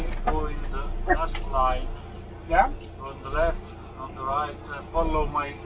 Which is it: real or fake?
real